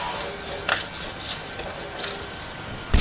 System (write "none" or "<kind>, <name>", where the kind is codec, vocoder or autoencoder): none